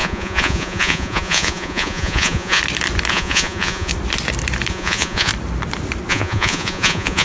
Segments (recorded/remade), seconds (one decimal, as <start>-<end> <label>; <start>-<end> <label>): 0.0-2.6 remade; 2.6-3.1 recorded; 3.1-3.9 remade; 3.9-4.7 recorded; 4.7-5.3 remade; 5.3-6.1 recorded; 6.1-7.2 remade